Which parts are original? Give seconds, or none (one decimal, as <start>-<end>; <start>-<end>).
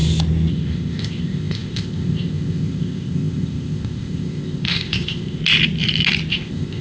0.0-0.5; 5.4-6.3